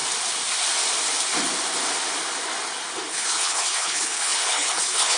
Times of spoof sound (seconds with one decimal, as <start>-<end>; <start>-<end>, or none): 3.1-5.2